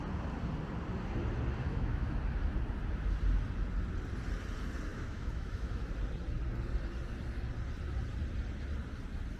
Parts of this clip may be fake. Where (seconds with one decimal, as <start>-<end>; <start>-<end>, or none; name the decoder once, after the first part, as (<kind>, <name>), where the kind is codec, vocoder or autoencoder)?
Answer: 1.6-2.1 (autoencoder, DAC-VAE); 4.9-5.9